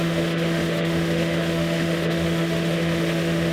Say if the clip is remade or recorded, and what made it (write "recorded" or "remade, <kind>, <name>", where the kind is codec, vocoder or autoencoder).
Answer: remade, autoencoder, DAC-VAE